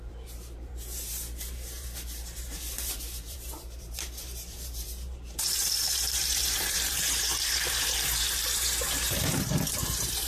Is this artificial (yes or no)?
yes